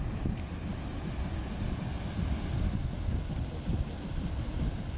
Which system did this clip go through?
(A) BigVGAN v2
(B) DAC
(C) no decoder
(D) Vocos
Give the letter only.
C